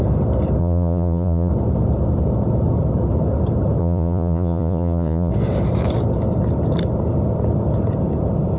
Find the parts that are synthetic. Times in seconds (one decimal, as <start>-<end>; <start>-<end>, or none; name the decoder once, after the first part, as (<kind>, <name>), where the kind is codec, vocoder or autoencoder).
0.6-1.5 (vocoder, Vocos); 3.8-5.3